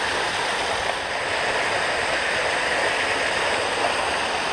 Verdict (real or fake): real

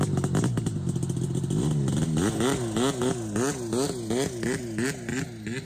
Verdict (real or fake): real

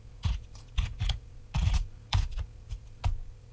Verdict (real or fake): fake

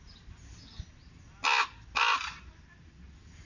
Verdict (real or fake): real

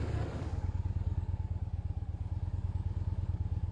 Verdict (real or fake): fake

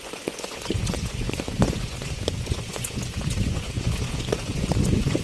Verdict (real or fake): fake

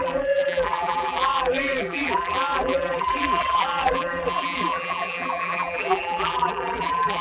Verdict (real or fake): fake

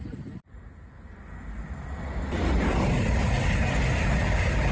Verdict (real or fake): real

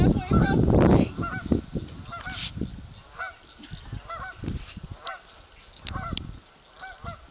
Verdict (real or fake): real